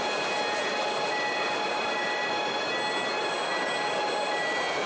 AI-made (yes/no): no